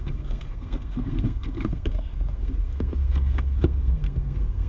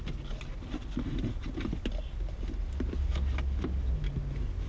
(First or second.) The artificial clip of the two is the first